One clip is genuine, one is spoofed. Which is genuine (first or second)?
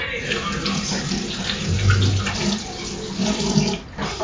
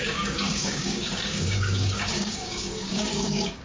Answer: first